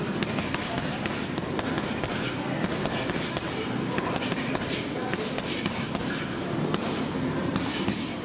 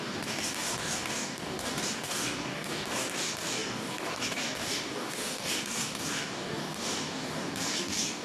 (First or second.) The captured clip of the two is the first